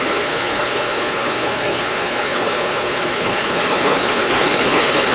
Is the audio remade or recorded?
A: remade